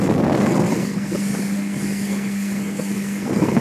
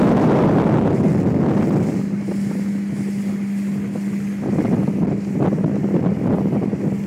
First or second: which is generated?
first